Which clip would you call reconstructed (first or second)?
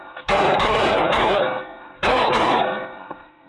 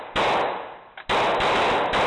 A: first